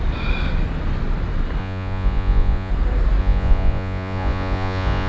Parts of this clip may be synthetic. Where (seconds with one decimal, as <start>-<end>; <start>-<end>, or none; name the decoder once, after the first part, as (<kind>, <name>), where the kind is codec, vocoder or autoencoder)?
1.6-2.7 (vocoder, Vocos); 3.2-5.1